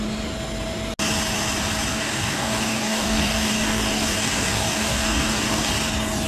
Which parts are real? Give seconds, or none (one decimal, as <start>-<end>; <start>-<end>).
0.0-1.9; 5.7-6.3